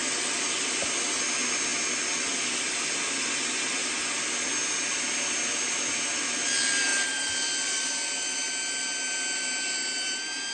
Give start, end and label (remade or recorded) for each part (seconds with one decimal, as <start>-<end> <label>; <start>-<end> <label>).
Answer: 0.0-0.7 remade; 0.7-6.9 recorded; 6.9-8.5 remade; 8.5-10.5 recorded